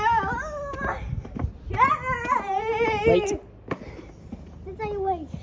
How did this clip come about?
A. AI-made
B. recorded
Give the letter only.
B